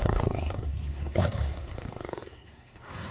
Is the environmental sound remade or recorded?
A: remade